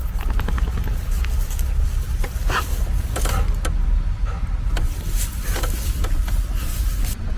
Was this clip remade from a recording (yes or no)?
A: no